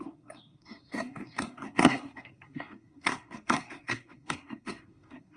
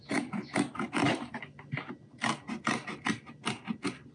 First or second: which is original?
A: second